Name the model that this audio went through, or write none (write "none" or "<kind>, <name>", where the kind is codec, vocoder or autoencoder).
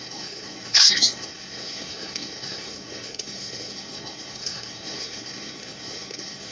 codec, SNAC